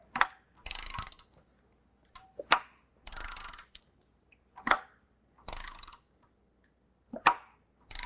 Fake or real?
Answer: real